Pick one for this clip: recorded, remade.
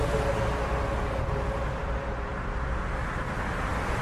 recorded